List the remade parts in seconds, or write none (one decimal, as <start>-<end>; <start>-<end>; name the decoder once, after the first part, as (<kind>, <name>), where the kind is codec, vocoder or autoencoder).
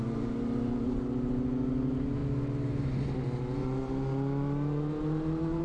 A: none